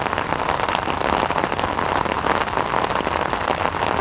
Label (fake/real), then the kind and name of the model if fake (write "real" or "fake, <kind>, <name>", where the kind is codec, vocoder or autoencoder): real